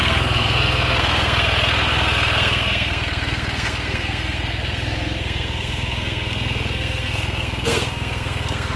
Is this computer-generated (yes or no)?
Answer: yes